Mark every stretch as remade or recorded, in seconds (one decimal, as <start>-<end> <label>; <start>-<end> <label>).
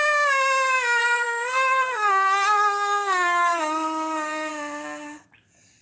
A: 0.0-1.0 recorded; 1.0-4.5 remade; 4.5-5.8 recorded